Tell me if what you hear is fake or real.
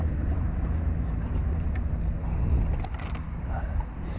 real